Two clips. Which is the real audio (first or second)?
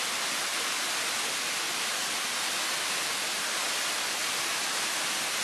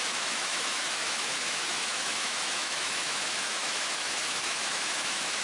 first